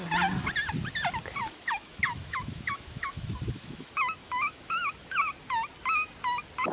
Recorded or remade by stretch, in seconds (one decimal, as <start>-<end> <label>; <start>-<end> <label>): 0.0-1.4 recorded; 1.4-5.2 remade; 5.2-6.7 recorded